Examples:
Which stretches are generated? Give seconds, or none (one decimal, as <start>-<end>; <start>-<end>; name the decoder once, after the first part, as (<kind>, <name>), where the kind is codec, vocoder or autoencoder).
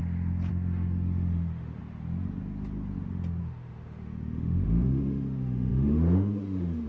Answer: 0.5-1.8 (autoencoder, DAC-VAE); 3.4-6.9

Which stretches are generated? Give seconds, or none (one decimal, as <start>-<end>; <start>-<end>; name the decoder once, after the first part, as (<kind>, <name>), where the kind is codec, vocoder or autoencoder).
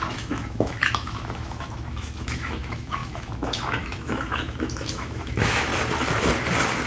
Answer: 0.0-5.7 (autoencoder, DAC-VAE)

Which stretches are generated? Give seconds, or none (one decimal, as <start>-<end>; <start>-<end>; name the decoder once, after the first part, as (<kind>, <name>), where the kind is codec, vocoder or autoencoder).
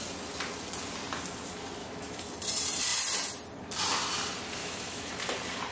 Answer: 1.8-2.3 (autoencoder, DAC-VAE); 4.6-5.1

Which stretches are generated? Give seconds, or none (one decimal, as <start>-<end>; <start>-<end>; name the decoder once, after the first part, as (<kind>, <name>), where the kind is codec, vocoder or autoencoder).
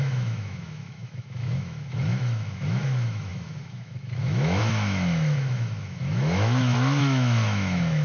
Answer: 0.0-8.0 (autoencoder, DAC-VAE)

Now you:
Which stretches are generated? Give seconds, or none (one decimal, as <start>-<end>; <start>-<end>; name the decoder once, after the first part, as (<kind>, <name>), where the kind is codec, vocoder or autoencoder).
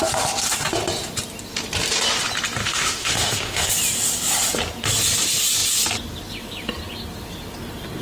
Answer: 2.6-3.7 (autoencoder, DAC-VAE)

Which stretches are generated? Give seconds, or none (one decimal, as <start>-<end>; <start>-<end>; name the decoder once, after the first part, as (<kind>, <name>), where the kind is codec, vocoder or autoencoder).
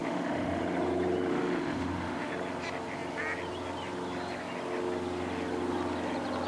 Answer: 0.0-0.6 (autoencoder, DAC-VAE); 1.3-2.3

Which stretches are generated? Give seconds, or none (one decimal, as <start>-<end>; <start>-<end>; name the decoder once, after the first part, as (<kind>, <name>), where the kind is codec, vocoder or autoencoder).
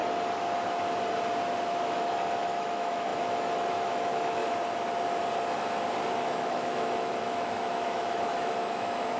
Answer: 1.7-4.4 (autoencoder, DAC-VAE); 6.1-9.2